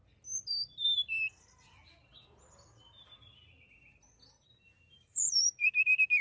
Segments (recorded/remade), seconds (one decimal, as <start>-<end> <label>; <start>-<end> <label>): 0.0-3.7 recorded; 3.7-6.2 remade